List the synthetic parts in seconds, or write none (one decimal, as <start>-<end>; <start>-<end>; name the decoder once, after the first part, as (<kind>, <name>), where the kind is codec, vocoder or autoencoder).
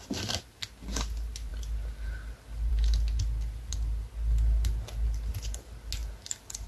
none